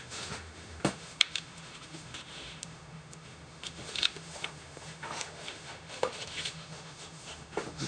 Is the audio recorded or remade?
remade